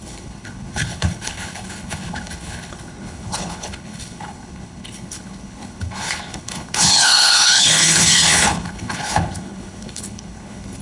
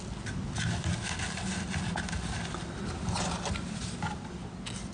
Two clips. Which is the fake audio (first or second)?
first